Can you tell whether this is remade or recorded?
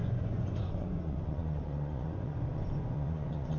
remade